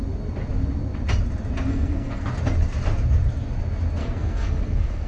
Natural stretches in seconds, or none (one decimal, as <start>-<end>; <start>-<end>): 0.0-1.7; 2.3-4.0